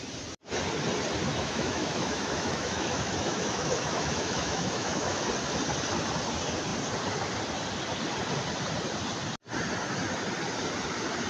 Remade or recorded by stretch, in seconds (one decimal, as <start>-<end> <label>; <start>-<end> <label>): 0.0-1.3 recorded; 1.3-5.2 remade; 5.2-11.3 recorded